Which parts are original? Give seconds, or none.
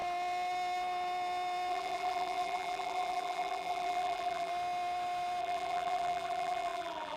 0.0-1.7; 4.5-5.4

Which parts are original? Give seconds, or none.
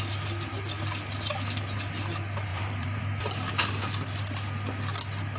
0.0-2.5; 3.0-5.4